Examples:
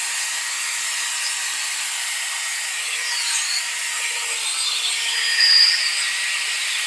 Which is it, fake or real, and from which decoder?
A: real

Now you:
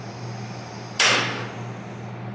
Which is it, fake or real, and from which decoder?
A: real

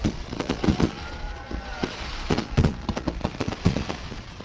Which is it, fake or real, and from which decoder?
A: fake, vocoder, Vocos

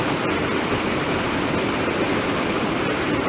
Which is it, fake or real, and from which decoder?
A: real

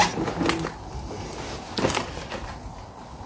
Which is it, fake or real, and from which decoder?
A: real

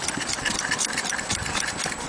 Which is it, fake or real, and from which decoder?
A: real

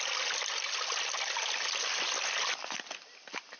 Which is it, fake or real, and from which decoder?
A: real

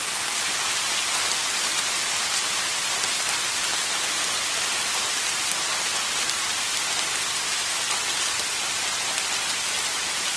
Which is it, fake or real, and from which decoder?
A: real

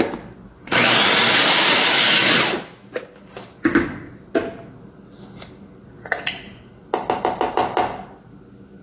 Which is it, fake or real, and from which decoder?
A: real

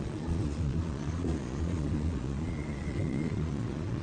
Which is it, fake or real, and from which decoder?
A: fake, vocoder, Vocos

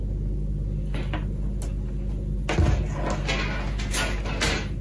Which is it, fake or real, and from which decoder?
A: real